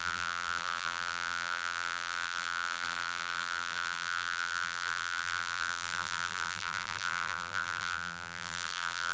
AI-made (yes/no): yes